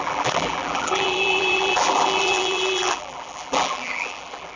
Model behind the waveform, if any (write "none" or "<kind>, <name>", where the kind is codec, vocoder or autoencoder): vocoder, BigVGAN v2